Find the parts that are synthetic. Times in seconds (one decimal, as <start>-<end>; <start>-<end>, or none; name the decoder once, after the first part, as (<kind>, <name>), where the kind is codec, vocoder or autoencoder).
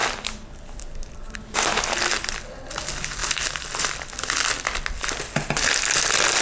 none